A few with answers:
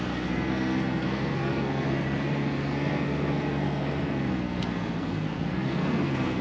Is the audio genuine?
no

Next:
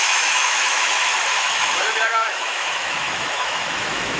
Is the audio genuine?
no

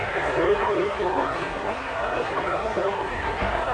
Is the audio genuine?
no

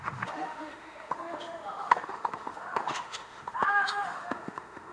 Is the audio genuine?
no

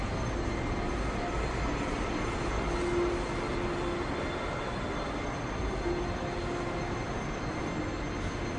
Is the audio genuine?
yes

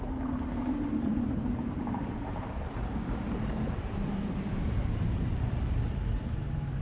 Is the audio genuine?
no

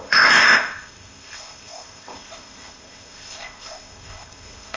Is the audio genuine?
no